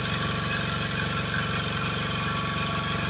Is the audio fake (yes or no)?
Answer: no